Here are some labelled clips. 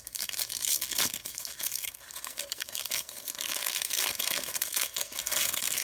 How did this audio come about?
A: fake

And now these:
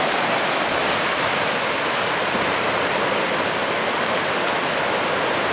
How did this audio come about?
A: real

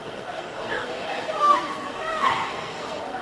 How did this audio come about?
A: fake